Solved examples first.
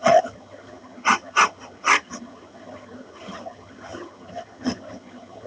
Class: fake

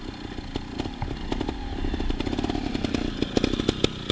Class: real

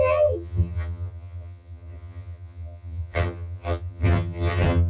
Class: fake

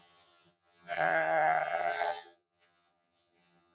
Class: fake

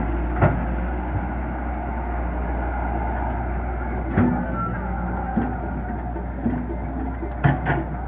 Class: real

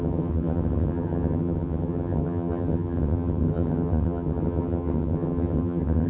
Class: fake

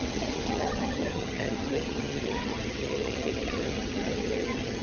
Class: fake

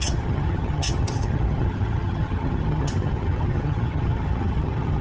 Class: fake